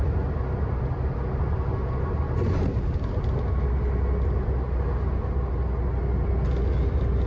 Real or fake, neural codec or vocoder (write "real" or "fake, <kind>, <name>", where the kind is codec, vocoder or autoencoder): real